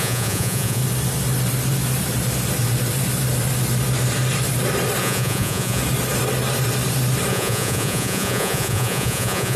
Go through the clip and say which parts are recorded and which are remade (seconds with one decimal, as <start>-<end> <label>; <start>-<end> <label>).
0.0-0.8 remade; 0.8-5.0 recorded; 5.0-5.8 remade; 5.8-7.3 recorded; 7.3-9.6 remade